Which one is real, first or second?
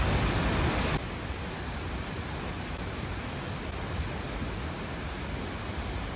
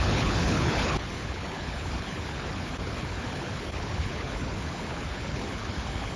first